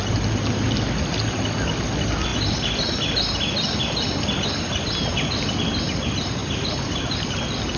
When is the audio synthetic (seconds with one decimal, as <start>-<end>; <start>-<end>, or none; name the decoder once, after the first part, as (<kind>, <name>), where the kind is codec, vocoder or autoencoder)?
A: 6.4-7.2 (vocoder, BigVGAN v2)